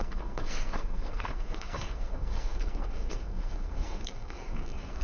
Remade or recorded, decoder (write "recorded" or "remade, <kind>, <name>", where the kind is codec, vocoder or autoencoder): remade, codec, SNAC